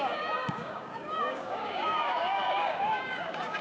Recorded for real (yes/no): no